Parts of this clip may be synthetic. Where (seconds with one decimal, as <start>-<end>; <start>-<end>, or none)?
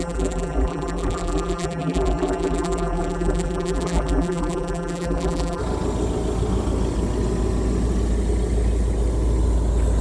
0.0-5.6